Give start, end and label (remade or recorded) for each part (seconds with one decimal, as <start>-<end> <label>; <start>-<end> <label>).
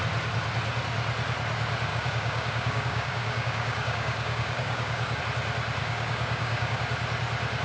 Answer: 0.0-1.9 recorded; 1.9-5.2 remade; 5.2-5.8 recorded; 5.8-6.8 remade; 6.8-7.6 recorded